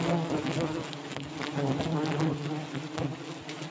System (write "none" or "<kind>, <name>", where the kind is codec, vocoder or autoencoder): none